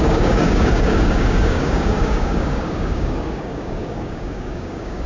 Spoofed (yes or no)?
yes